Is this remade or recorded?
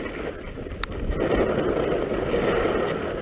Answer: recorded